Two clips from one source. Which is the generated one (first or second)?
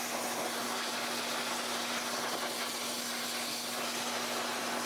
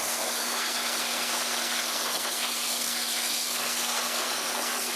second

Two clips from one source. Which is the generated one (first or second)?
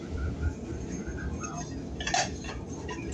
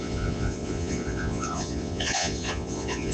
second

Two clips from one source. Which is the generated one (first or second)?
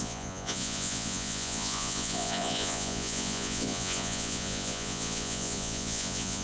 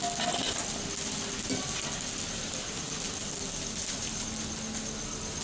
first